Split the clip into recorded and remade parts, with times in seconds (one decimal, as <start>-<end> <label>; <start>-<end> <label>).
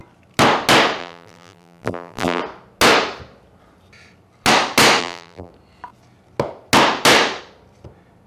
0.0-1.0 recorded; 1.0-2.4 remade; 2.4-5.0 recorded; 5.0-5.5 remade; 5.5-8.3 recorded